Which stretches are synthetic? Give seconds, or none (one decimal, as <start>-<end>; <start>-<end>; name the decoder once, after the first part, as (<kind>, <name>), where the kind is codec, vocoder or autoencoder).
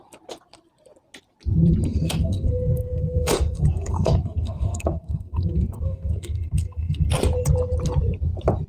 1.9-7.0 (codec, SNAC)